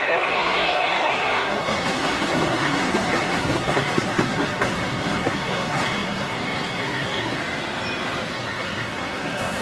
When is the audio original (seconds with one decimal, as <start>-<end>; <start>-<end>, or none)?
7.4-8.3